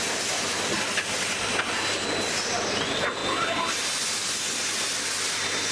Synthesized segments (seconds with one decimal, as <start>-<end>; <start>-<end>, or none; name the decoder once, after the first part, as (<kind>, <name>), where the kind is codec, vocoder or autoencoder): none